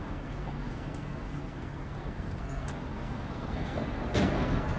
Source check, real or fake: fake